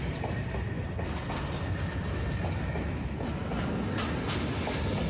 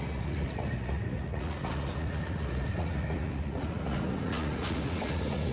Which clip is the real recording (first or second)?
first